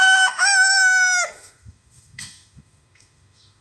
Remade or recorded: remade